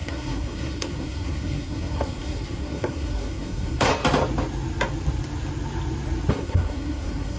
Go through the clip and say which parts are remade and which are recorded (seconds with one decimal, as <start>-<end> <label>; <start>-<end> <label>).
0.0-3.9 remade; 3.9-6.3 recorded; 6.3-7.4 remade